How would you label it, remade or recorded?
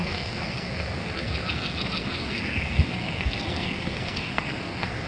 remade